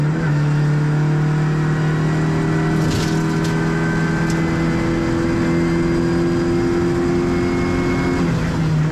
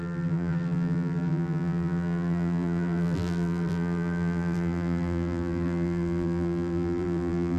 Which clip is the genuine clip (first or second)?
first